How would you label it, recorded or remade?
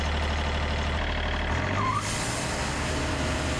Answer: recorded